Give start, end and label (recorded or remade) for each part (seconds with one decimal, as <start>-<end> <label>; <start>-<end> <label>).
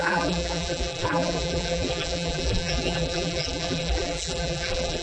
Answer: 0.0-5.0 remade